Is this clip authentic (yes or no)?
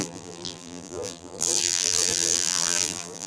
no